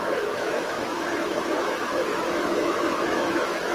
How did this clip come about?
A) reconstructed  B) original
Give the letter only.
A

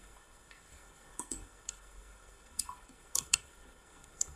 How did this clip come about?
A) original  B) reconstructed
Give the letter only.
B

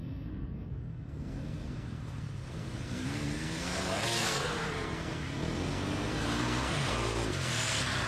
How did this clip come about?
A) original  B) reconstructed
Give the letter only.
B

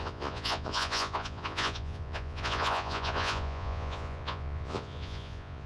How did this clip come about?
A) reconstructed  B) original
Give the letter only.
A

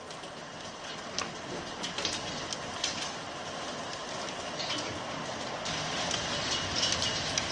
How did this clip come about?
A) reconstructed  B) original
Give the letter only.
B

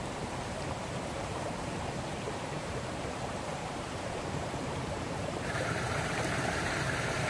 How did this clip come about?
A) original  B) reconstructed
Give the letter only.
B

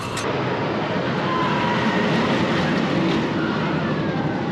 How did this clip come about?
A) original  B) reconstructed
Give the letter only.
A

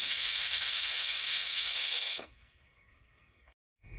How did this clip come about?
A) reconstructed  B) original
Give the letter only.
A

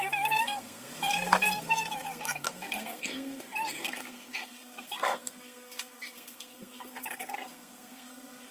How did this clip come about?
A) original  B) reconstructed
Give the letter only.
B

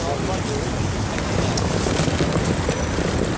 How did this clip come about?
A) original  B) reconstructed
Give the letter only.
A